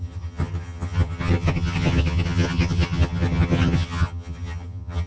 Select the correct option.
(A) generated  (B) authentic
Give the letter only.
A